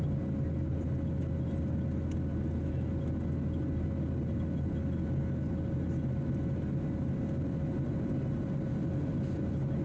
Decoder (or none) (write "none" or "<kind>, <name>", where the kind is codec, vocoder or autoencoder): none